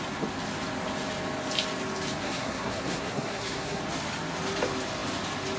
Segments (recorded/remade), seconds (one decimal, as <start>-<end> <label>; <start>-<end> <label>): 0.0-2.2 recorded; 2.2-3.8 remade; 3.8-5.6 recorded